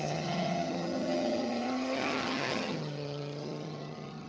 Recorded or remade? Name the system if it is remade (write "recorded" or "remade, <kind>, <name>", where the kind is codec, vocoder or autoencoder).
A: remade, vocoder, HiFi-GAN